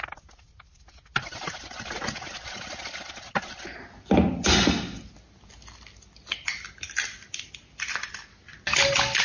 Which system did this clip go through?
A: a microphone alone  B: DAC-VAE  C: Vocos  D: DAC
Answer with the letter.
A